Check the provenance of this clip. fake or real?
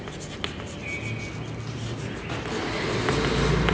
real